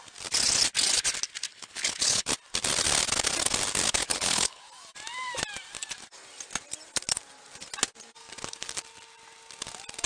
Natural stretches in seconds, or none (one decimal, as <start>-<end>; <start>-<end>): 0.0-1.5; 2.3-4.0; 4.6-10.1